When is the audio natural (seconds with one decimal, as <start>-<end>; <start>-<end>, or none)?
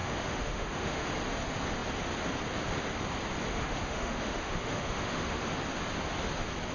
1.1-3.5; 5.4-6.7